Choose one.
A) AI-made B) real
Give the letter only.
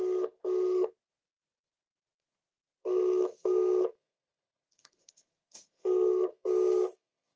A